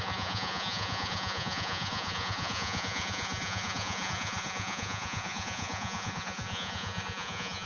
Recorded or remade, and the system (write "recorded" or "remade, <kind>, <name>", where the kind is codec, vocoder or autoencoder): remade, vocoder, Vocos